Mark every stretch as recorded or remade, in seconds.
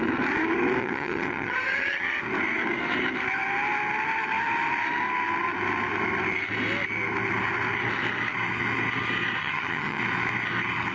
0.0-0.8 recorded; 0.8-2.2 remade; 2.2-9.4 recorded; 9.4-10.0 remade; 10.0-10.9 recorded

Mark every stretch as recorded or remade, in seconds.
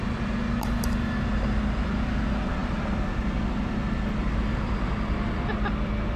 0.0-6.2 recorded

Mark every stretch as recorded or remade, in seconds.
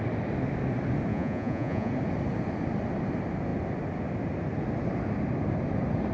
0.0-1.1 recorded; 1.1-1.9 remade; 1.9-6.1 recorded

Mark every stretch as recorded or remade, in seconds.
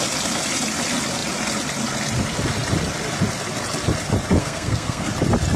0.0-4.4 recorded; 4.4-5.1 remade; 5.1-5.6 recorded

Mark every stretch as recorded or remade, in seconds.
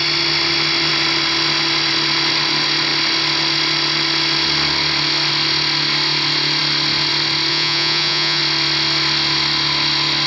0.0-7.5 recorded; 7.5-8.4 remade; 8.4-10.3 recorded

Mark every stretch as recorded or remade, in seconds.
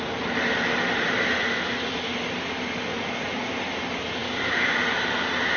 0.0-2.9 recorded; 2.9-3.5 remade; 3.5-5.6 recorded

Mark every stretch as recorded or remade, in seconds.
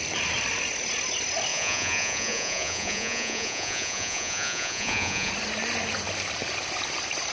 0.0-1.5 recorded; 1.5-5.3 remade; 5.3-7.3 recorded